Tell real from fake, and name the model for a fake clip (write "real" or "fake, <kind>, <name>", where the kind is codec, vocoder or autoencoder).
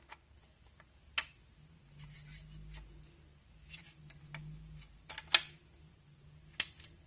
real